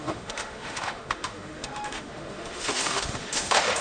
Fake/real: fake